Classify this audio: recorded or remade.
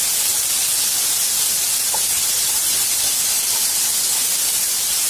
recorded